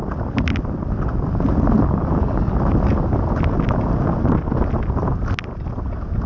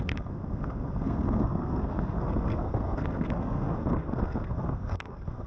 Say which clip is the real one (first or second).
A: first